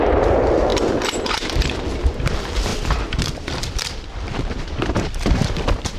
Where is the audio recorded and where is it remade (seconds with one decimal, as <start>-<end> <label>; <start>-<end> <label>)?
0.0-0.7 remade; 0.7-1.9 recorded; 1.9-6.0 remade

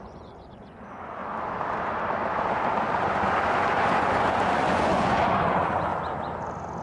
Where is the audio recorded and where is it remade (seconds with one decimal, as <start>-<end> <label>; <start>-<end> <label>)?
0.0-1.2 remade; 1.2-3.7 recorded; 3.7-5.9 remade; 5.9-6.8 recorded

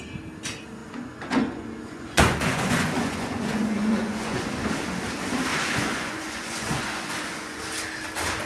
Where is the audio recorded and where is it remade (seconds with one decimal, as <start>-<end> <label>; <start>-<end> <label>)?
0.0-0.8 recorded; 0.8-4.5 remade; 4.5-5.5 recorded; 5.5-7.6 remade; 7.6-8.5 recorded